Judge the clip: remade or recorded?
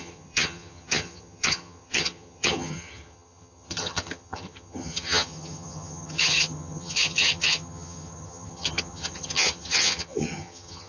remade